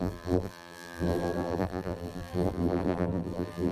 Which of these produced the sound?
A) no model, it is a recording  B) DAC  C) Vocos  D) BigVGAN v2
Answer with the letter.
D